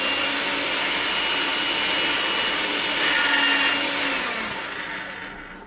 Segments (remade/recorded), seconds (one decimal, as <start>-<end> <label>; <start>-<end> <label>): 0.0-5.7 recorded